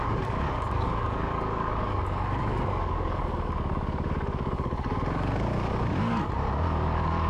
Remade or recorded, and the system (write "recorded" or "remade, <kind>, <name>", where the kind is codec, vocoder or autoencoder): remade, codec, DAC